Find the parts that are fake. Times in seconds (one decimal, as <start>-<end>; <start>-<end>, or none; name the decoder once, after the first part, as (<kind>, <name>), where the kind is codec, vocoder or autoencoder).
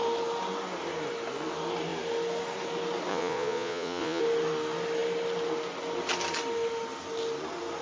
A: 3.1-4.2 (vocoder, Vocos)